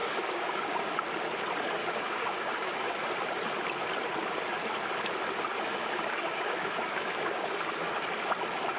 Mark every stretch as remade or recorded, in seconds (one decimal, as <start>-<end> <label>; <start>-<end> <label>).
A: 0.0-0.8 remade; 0.8-1.8 recorded; 1.8-2.9 remade; 2.9-5.5 recorded; 5.5-7.9 remade; 7.9-8.8 recorded